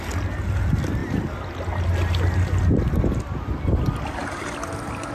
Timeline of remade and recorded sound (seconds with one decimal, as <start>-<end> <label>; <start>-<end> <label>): 0.0-5.1 recorded